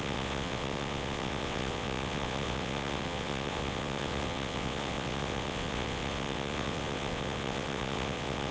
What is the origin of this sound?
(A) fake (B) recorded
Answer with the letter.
A